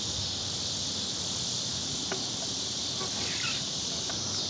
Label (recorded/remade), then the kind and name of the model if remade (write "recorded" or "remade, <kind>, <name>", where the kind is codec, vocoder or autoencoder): recorded